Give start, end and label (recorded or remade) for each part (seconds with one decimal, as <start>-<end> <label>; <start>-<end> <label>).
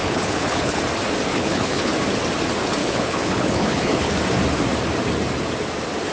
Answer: 0.0-0.8 remade; 0.8-1.3 recorded; 1.3-1.9 remade; 1.9-2.8 recorded; 2.8-4.1 remade; 4.1-6.1 recorded